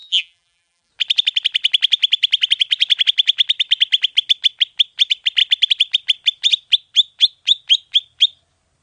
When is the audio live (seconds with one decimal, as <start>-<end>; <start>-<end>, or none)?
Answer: 0.9-8.8